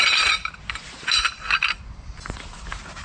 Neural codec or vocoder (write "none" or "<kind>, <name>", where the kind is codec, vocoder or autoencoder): none